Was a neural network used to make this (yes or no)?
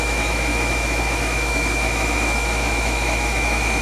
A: yes